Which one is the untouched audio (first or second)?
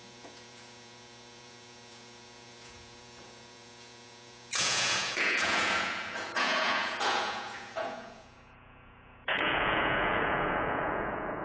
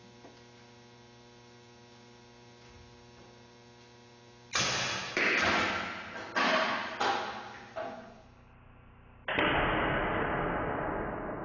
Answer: second